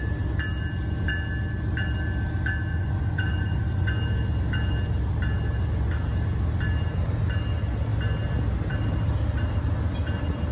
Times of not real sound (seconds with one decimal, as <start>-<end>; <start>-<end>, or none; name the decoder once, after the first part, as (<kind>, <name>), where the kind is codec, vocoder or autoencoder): 2.7-3.9 (vocoder, Vocos)